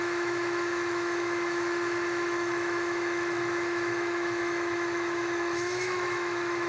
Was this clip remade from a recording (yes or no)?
yes